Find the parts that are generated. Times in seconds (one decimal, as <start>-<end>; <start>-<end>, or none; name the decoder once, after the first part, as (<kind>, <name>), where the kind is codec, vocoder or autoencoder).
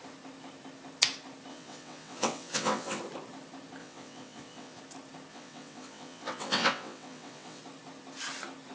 1.5-3.0 (vocoder, WaveNeXt); 3.8-4.8; 5.3-7.6